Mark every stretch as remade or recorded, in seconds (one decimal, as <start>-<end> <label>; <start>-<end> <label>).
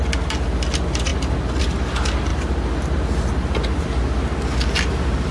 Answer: 0.0-5.3 recorded